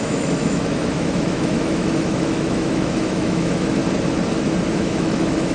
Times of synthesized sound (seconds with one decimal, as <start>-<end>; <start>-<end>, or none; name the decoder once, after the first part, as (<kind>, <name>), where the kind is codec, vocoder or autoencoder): 0.0-3.8 (autoencoder, DAC-VAE); 4.7-5.5